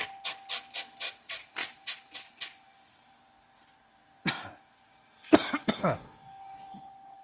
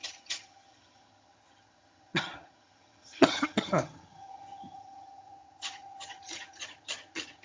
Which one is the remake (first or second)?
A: second